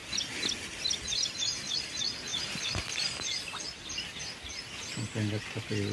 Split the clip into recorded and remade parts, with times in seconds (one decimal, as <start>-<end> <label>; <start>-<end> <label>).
0.0-2.3 recorded; 2.3-4.3 remade; 4.3-5.9 recorded